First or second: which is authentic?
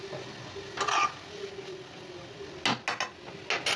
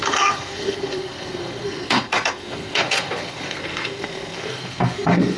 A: first